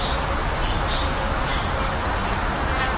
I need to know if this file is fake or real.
real